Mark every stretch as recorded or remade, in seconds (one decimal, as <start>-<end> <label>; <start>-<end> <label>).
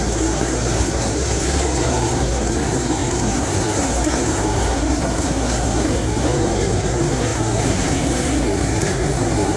0.0-9.6 remade